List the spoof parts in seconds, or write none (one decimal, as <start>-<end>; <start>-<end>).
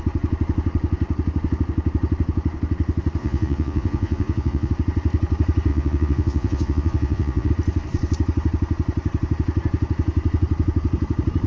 3.2-4.7; 5.7-7.5